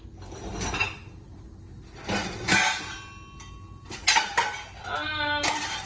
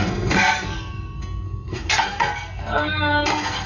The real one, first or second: first